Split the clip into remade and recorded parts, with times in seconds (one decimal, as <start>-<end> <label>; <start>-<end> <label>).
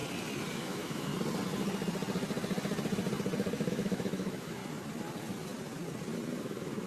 0.0-0.5 recorded; 0.5-1.1 remade; 1.1-3.7 recorded; 3.7-4.6 remade; 4.6-6.4 recorded; 6.4-6.9 remade